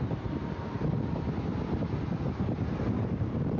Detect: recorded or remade recorded